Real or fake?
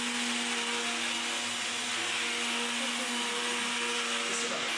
real